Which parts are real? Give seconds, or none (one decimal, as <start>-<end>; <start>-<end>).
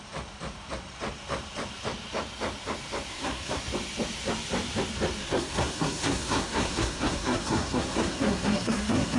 0.0-3.1; 3.6-5.2